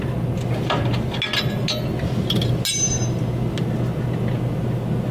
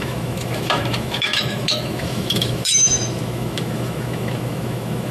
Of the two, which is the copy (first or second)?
second